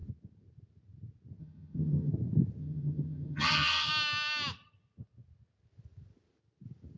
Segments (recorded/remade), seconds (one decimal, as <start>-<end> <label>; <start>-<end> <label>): 0.0-1.4 recorded; 1.4-2.1 remade; 2.1-2.6 recorded; 2.6-3.9 remade; 3.9-7.0 recorded